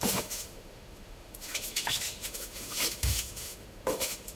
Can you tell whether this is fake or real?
fake